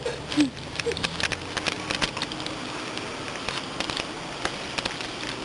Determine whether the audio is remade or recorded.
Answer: recorded